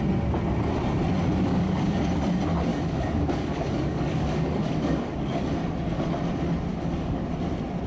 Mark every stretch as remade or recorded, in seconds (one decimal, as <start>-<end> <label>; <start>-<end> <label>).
0.0-1.5 recorded; 1.5-2.1 remade; 2.1-2.7 recorded; 2.7-5.4 remade; 5.4-6.7 recorded; 6.7-7.2 remade; 7.2-7.9 recorded